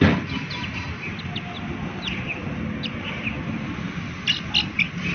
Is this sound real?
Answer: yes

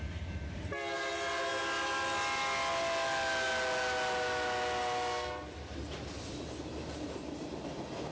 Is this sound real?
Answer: yes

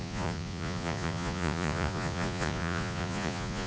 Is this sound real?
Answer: no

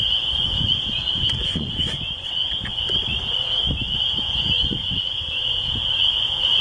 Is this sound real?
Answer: no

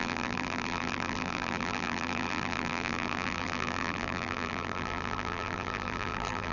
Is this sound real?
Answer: no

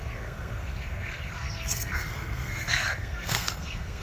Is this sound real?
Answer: no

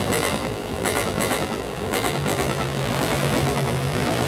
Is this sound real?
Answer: no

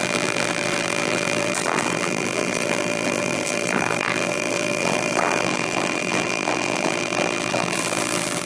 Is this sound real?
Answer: no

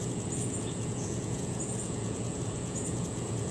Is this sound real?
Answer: no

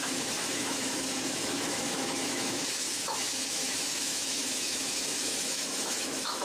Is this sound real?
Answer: no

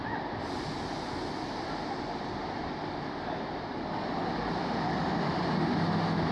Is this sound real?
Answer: yes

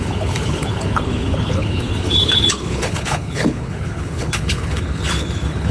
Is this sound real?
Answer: no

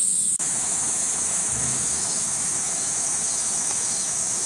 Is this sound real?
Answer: no